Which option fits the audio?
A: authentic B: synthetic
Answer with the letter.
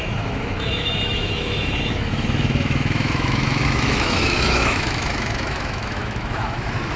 B